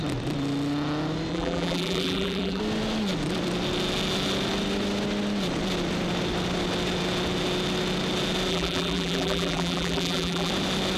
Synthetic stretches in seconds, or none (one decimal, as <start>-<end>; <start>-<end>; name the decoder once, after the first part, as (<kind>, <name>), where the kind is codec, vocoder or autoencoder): 1.3-2.6 (vocoder, BigVGAN v2); 8.5-10.5